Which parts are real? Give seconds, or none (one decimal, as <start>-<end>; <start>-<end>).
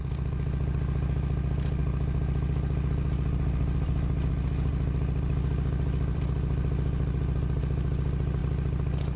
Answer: 0.0-1.8; 4.3-4.7; 7.6-8.4